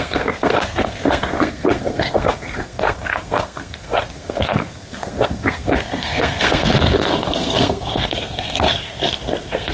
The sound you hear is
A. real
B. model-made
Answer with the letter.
B